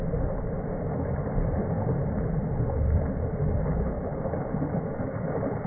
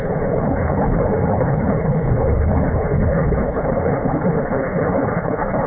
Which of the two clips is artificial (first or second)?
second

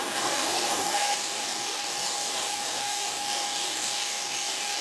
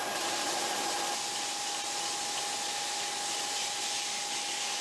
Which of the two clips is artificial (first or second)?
first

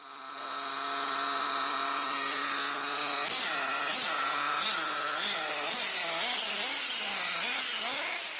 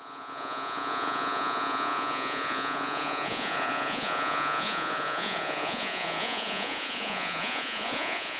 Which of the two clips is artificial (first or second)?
second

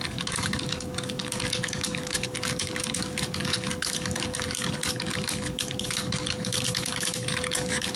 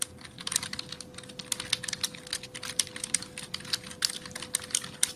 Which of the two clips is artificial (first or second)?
first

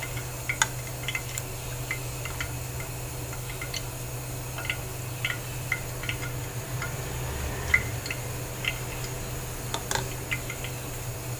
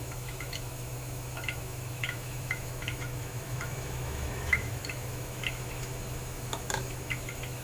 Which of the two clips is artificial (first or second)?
second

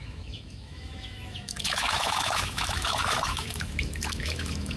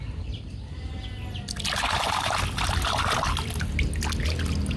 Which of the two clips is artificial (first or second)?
first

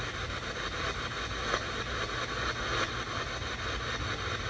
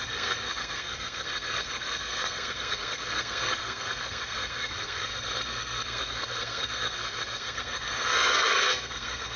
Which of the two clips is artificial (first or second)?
second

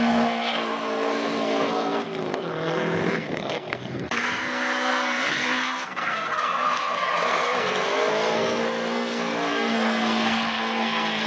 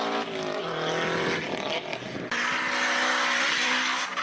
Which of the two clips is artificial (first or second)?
first